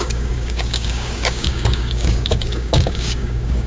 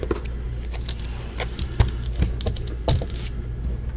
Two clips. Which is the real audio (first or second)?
second